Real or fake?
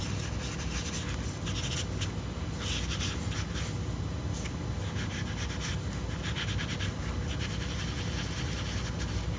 real